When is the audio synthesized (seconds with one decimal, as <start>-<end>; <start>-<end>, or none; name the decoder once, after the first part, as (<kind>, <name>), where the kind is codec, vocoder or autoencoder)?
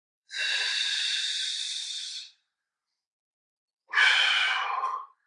0.0-1.5 (vocoder, BigVGAN v2)